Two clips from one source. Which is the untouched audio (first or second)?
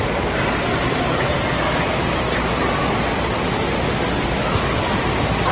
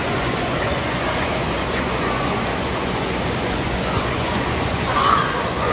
first